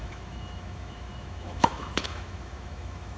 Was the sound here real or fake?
fake